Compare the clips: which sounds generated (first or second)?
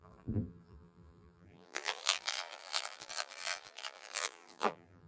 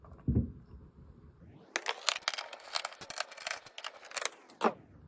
first